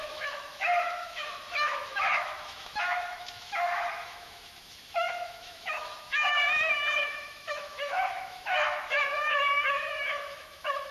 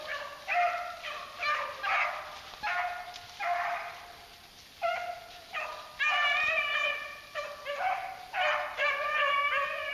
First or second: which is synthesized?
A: first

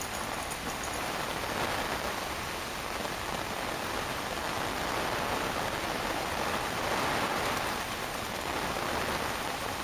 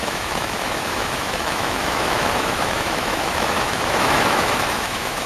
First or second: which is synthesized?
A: second